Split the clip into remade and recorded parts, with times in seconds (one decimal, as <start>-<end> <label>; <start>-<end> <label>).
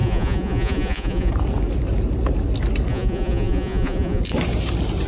0.0-1.3 remade; 1.3-2.9 recorded; 2.9-4.2 remade; 4.2-5.1 recorded